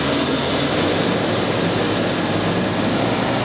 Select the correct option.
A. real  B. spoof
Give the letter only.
A